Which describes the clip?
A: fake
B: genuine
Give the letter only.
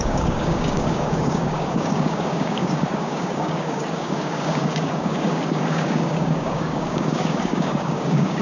A